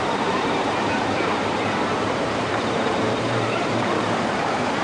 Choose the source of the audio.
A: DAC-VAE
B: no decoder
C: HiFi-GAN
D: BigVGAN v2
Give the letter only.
D